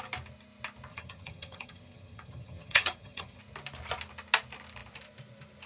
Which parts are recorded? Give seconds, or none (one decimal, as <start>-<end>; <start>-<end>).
0.0-0.9; 3.4-5.7